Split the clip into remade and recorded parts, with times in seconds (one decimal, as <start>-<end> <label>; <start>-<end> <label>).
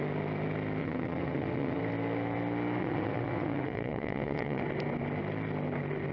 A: 0.0-0.8 recorded; 0.8-1.8 remade; 1.8-2.8 recorded; 2.8-4.6 remade; 4.6-6.1 recorded